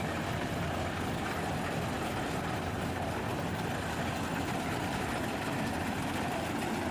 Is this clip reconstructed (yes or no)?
no